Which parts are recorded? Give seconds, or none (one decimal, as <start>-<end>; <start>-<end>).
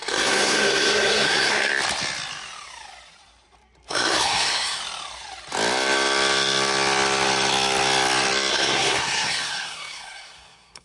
1.7-3.9; 4.8-8.5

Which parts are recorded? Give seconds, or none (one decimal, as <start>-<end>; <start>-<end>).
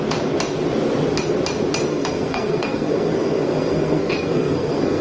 0.0-1.9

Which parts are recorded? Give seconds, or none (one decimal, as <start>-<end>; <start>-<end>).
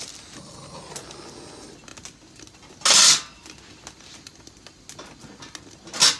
0.0-6.2